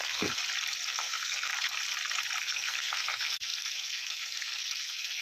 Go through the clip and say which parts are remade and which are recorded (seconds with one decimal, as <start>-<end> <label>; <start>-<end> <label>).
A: 0.0-0.4 remade; 0.4-0.9 recorded; 0.9-1.5 remade; 1.5-2.4 recorded; 2.4-5.2 remade